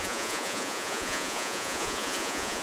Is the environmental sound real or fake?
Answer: fake